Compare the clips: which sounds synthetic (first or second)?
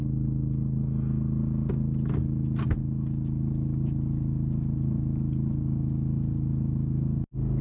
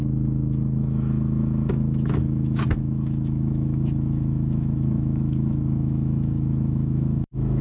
second